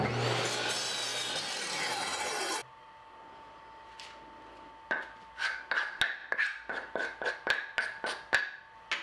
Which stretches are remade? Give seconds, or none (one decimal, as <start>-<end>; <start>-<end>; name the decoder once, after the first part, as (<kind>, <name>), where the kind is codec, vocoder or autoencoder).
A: none